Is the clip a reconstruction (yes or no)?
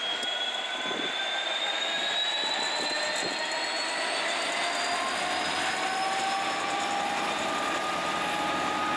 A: no